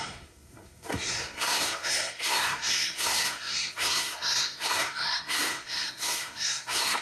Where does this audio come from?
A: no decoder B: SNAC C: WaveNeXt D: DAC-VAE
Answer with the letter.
B